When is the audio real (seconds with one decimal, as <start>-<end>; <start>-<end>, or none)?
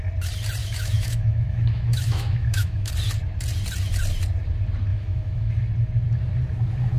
0.0-0.6; 2.9-4.9; 5.5-7.0